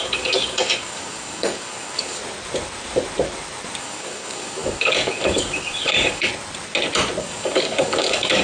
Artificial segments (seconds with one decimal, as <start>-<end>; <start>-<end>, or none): 0.0-2.2; 3.8-6.3; 7.2-8.4